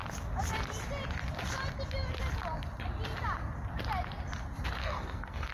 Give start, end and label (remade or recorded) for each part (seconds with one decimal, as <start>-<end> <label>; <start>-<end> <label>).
0.0-4.8 recorded; 4.8-5.5 remade